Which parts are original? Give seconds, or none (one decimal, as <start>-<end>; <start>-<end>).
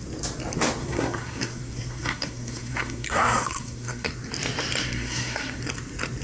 0.0-0.8; 4.1-4.8; 5.6-6.2